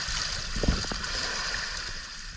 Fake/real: real